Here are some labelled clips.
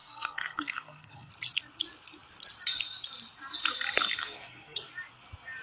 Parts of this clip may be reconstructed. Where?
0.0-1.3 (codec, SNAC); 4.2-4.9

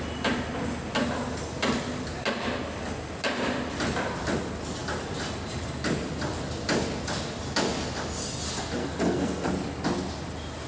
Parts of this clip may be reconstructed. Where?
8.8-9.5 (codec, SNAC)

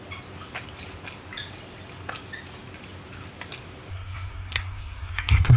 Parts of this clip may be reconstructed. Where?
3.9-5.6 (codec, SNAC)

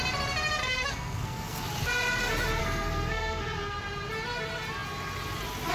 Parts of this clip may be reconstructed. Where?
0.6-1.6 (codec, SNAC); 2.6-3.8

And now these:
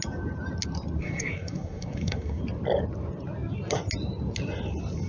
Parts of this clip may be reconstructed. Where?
1.0-2.4 (codec, SNAC)

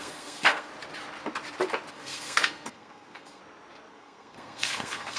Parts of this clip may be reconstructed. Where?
0.0-0.7 (codec, SNAC); 1.9-3.4; 3.9-5.2

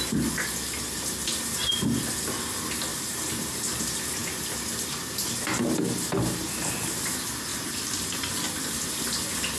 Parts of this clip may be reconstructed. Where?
none